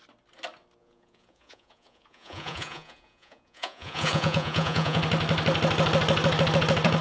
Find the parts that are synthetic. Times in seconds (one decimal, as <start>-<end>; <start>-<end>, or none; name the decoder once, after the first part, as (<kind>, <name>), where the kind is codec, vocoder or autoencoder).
0.8-5.0 (vocoder, Vocos)